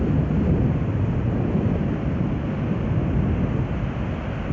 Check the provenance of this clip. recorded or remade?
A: recorded